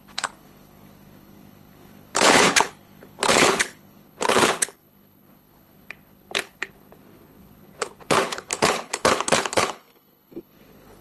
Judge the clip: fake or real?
fake